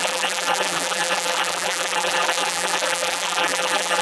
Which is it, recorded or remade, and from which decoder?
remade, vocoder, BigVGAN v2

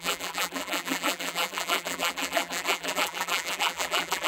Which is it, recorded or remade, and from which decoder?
remade, vocoder, BigVGAN v2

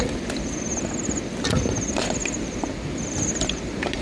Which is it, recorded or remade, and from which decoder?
remade, vocoder, BigVGAN v2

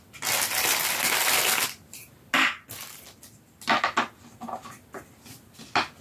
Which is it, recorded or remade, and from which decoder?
recorded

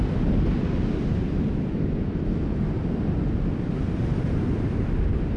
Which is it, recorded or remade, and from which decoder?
recorded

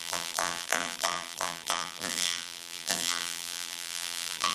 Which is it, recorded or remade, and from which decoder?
remade, vocoder, BigVGAN v2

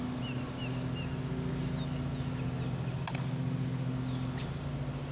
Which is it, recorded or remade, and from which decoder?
recorded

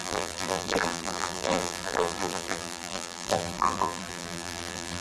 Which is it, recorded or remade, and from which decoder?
remade, vocoder, BigVGAN v2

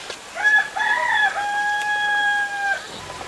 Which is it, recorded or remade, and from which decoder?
remade, vocoder, BigVGAN v2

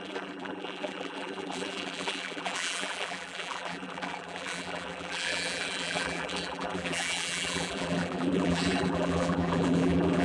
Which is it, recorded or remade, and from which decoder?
remade, vocoder, BigVGAN v2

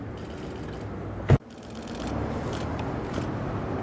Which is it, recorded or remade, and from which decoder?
recorded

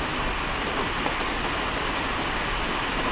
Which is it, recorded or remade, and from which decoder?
recorded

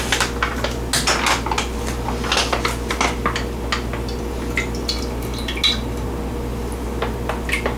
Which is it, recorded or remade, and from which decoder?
recorded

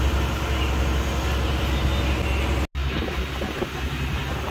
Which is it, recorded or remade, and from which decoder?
recorded